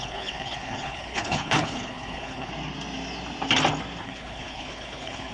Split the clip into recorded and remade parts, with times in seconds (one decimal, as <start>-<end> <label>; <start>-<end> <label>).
0.0-2.5 remade; 2.5-4.0 recorded; 4.0-5.3 remade